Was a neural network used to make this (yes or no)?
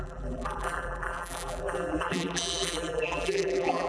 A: yes